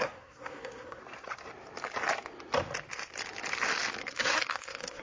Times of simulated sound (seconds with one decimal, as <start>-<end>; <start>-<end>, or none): 0.0-1.0; 4.0-5.0